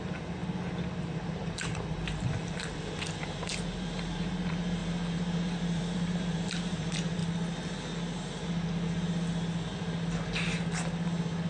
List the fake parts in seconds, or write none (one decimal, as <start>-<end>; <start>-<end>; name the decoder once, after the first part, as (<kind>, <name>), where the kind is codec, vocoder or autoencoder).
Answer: 0.0-0.4 (vocoder, BigVGAN v2); 1.0-7.2

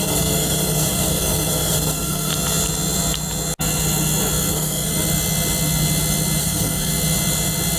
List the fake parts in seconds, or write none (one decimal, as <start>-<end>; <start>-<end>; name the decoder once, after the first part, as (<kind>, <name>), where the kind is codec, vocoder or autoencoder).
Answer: 0.0-2.3 (codec, SNAC); 4.5-4.9; 6.4-6.9

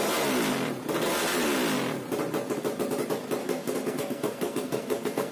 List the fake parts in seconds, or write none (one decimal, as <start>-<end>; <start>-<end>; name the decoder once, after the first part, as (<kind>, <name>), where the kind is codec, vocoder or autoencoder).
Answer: 3.4-5.3 (codec, SNAC)